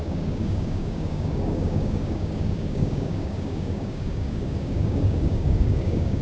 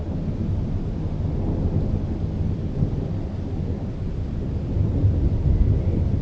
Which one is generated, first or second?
first